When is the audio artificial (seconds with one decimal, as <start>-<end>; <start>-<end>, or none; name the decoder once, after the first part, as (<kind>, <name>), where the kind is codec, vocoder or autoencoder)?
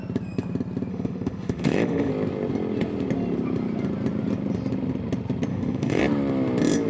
0.9-2.1 (autoencoder, DAC-VAE); 5.5-6.0